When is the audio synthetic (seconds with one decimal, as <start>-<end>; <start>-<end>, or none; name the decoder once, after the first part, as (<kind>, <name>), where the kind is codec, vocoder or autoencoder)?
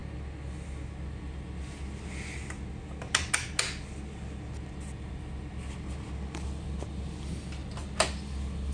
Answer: none